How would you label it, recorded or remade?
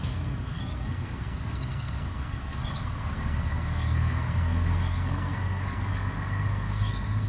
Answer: remade